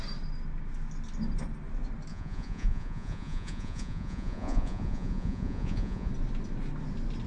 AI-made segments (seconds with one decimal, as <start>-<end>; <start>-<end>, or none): 2.1-6.1